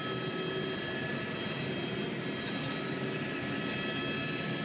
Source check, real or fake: real